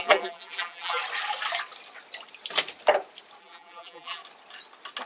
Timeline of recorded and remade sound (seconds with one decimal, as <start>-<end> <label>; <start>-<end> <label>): 0.0-1.0 remade; 1.0-3.4 recorded; 3.4-4.2 remade; 4.2-5.1 recorded